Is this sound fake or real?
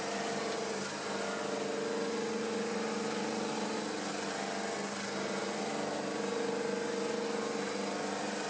real